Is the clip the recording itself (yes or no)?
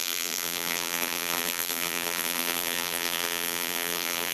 no